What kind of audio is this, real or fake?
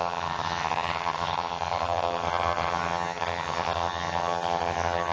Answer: fake